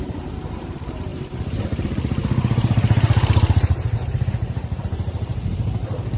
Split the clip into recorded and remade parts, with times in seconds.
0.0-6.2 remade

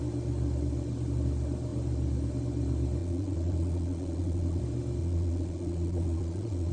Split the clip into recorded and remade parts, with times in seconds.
0.0-3.0 recorded; 3.0-4.6 remade; 4.6-5.0 recorded; 5.0-6.7 remade

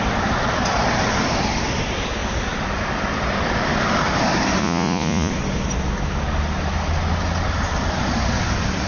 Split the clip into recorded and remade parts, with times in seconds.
0.0-4.6 recorded; 4.6-5.3 remade; 5.3-8.9 recorded